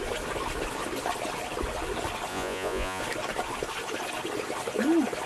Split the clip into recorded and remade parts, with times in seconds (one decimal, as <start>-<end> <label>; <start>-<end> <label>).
0.0-2.3 recorded; 2.3-3.0 remade; 3.0-5.3 recorded